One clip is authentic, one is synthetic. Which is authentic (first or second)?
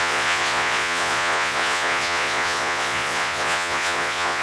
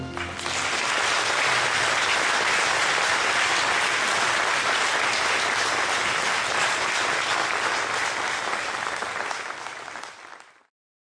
second